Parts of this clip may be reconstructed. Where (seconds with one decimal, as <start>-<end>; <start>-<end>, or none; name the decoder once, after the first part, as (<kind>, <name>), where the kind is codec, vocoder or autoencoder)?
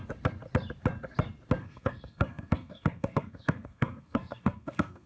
1.6-5.1 (codec, SNAC)